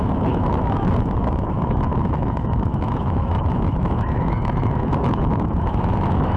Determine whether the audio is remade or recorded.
remade